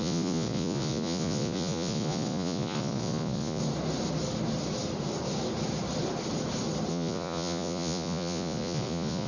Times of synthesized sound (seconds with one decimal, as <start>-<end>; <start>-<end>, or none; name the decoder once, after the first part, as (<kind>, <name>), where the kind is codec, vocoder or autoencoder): 0.0-3.6 (vocoder, Vocos); 6.9-9.3